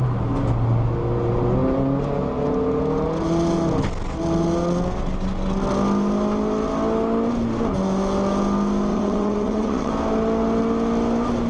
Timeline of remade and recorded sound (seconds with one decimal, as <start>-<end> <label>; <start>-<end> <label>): 0.0-8.9 recorded; 8.9-9.9 remade; 9.9-11.5 recorded